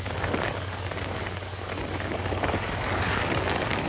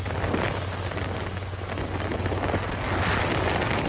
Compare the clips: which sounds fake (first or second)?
first